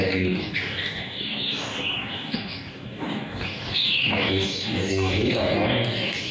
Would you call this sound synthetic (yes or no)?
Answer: yes